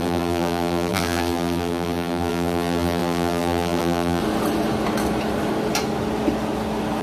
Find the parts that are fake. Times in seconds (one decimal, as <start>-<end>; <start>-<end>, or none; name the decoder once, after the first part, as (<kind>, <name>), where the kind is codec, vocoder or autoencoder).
0.0-4.2 (vocoder, BigVGAN v2)